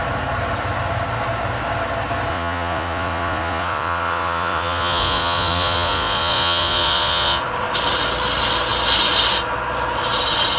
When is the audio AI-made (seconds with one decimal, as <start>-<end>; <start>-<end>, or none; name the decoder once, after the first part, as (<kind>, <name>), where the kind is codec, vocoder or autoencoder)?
2.3-7.4 (vocoder, Vocos)